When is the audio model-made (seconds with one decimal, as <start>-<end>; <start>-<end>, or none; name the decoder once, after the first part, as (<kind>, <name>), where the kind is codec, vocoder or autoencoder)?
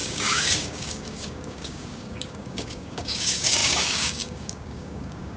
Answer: 0.0-5.4 (codec, DAC)